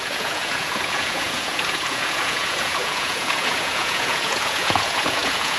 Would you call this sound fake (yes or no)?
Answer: yes